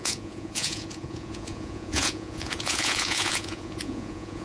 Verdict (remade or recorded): remade